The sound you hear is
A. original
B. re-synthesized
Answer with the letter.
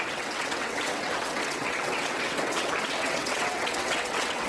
B